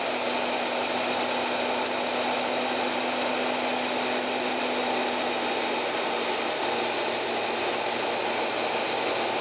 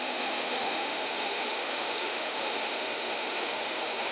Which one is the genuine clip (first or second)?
first